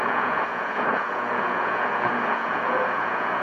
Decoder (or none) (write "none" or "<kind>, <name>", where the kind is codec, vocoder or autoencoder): vocoder, Vocos